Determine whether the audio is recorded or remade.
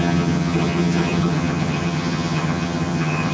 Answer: remade